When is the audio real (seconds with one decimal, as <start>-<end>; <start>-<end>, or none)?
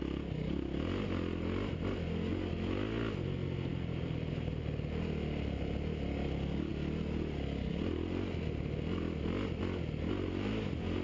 0.0-11.0